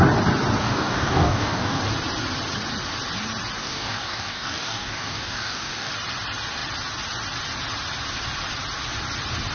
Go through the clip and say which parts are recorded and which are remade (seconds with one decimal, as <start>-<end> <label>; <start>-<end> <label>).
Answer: 0.0-0.6 recorded; 0.6-1.8 remade; 1.8-3.6 recorded; 3.6-5.9 remade; 5.9-9.5 recorded